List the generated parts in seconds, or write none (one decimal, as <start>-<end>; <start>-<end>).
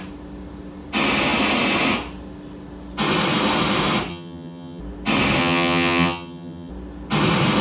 4.1-4.8; 5.4-6.7